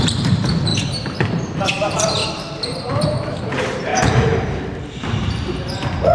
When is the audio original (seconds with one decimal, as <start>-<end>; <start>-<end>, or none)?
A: 2.2-3.3